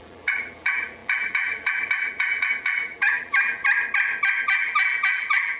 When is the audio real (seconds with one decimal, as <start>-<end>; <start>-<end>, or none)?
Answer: 3.6-4.4